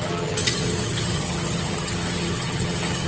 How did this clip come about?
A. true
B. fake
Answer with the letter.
B